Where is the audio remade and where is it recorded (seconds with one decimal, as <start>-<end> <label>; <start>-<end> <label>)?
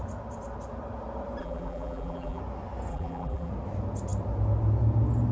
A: 0.0-1.4 recorded; 1.4-2.4 remade; 2.4-2.9 recorded; 2.9-3.5 remade; 3.5-5.3 recorded